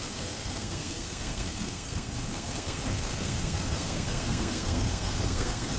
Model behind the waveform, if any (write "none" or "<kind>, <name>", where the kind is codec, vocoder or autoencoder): codec, SNAC